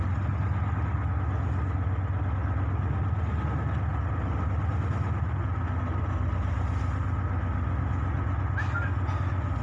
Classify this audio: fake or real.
real